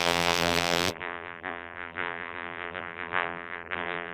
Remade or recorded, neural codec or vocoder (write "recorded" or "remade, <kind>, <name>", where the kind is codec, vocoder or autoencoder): remade, vocoder, BigVGAN v2